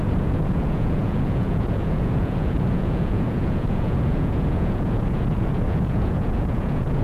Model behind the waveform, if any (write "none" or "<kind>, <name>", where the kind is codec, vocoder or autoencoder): vocoder, Vocos